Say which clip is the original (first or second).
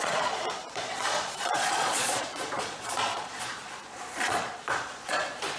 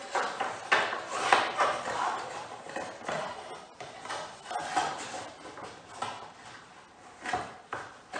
second